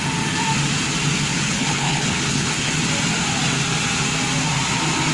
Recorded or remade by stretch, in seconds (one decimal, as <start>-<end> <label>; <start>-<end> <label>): 0.0-1.3 recorded; 1.3-2.7 remade; 2.7-5.1 recorded